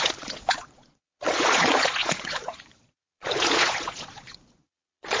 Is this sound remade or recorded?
remade